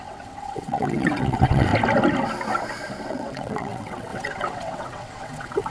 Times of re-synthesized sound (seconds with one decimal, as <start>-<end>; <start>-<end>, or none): 0.0-1.7; 3.1-5.7